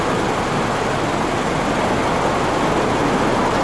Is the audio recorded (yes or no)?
yes